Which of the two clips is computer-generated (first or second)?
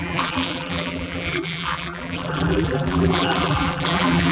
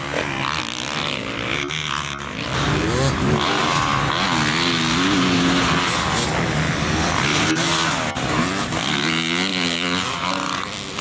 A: first